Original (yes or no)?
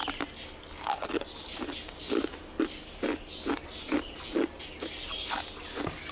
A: yes